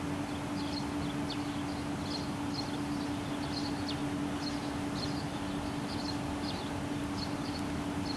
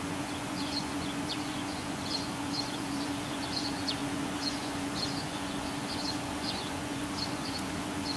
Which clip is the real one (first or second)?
first